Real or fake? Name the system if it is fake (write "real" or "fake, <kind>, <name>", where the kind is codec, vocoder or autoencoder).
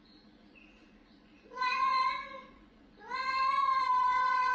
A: fake, vocoder, Vocos